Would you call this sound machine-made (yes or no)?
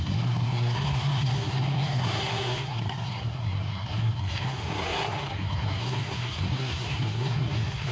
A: yes